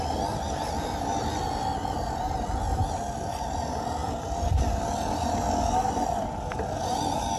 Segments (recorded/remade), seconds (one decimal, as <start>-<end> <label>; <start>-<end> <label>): 0.0-7.4 recorded